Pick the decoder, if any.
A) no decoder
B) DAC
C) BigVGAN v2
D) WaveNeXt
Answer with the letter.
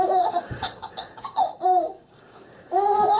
B